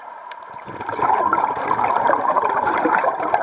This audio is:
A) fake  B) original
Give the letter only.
A